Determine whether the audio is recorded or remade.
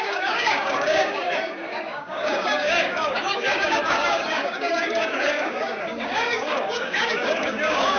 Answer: remade